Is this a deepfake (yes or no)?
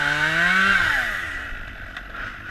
no